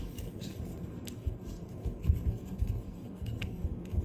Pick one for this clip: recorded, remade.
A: remade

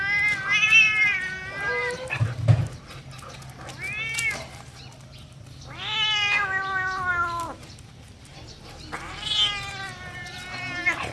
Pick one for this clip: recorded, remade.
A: recorded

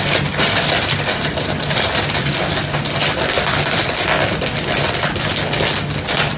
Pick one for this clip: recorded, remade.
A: recorded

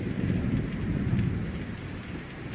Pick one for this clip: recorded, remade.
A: recorded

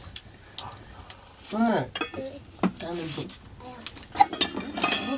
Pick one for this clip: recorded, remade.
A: recorded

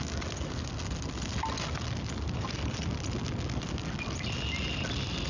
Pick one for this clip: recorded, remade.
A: recorded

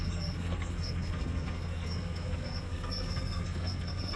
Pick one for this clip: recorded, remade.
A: remade